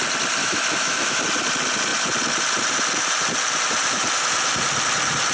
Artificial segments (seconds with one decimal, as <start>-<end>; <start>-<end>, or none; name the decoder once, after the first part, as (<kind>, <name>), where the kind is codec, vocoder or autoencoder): 0.4-1.2 (autoencoder, DAC-VAE)